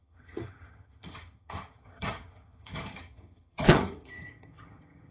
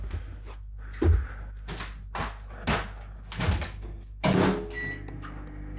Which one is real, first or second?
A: second